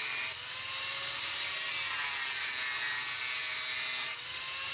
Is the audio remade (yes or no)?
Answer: no